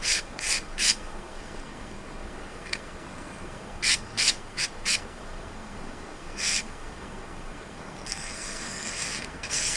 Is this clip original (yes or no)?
no